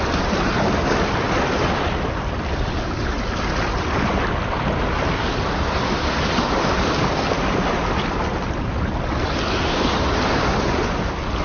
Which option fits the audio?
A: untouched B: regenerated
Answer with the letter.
A